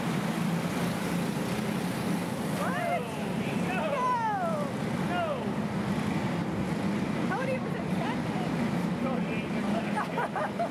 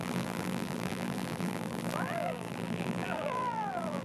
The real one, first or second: first